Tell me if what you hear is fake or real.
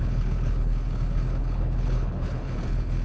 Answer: fake